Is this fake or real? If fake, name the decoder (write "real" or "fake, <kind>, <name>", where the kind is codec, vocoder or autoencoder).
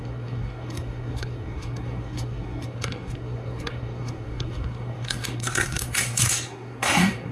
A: fake, codec, SNAC